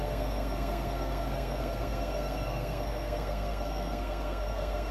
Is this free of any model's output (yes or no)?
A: no